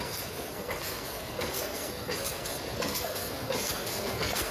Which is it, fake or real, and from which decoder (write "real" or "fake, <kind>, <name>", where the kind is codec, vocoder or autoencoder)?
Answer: fake, codec, SNAC